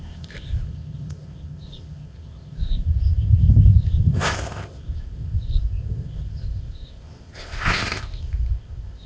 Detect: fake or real fake